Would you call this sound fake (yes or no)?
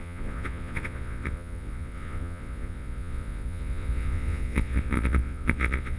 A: yes